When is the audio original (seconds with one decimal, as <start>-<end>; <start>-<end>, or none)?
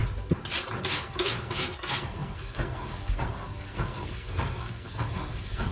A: 0.0-0.8